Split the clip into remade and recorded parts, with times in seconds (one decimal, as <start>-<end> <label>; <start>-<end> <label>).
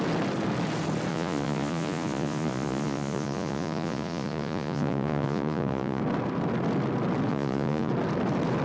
0.0-1.1 recorded; 1.1-6.0 remade; 6.0-7.3 recorded; 7.3-7.9 remade; 7.9-8.6 recorded